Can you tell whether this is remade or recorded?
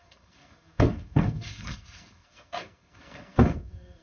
remade